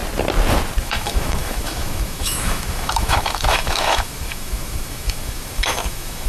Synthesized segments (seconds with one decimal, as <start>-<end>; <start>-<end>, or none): 0.8-6.3